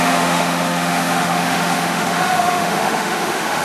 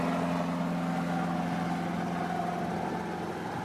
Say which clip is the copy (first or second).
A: first